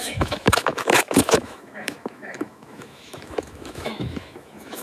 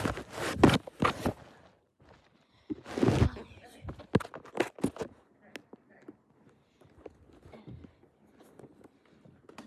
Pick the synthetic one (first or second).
first